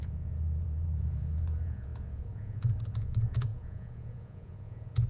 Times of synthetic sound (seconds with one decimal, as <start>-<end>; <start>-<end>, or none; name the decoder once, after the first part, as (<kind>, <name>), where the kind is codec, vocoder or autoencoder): 0.0-5.1 (vocoder, Vocos)